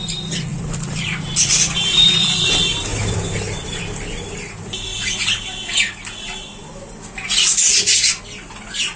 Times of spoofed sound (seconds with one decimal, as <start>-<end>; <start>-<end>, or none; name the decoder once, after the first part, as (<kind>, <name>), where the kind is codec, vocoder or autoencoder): 0.5-1.2 (vocoder, BigVGAN v2); 2.9-3.8; 4.9-5.4